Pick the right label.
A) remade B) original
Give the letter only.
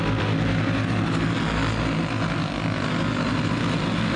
B